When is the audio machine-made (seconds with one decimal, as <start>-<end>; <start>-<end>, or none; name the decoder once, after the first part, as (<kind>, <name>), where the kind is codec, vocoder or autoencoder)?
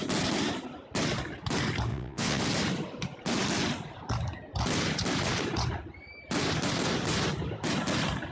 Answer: 1.9-2.4 (vocoder, WaveNeXt)